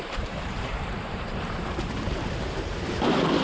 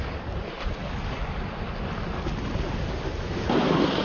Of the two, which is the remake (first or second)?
first